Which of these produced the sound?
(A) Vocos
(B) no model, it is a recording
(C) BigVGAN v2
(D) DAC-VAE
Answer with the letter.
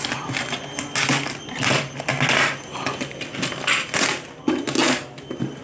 B